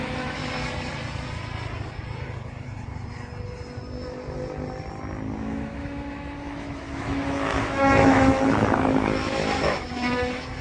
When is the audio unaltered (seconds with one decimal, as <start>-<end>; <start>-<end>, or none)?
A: 0.4-5.4

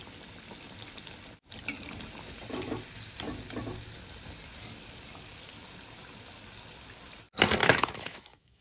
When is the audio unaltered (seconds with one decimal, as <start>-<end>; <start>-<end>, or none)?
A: 0.0-7.6

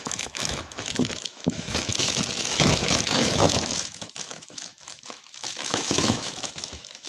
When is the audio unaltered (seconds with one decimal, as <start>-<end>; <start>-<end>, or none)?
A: none

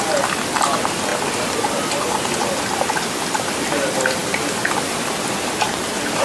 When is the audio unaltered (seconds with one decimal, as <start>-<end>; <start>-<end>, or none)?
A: 0.0-6.2

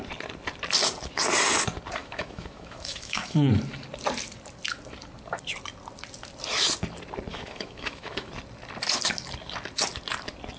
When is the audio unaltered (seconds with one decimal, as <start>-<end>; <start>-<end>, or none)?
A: 0.0-2.0; 3.5-7.3; 8.3-10.6

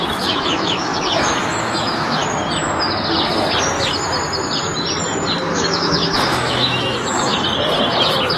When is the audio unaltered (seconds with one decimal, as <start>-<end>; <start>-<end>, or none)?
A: 2.2-5.4; 7.3-8.4

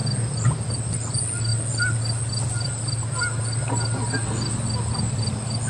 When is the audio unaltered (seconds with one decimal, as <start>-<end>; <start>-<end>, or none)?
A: 0.0-5.7